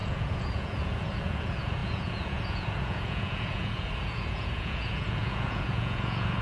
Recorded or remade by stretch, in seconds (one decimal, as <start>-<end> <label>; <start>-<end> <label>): 0.0-6.4 remade